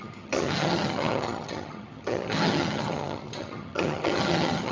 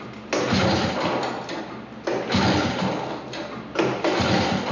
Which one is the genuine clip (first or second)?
second